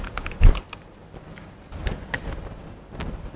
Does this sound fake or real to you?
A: real